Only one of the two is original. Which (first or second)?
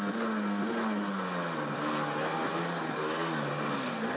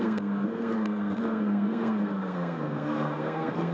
first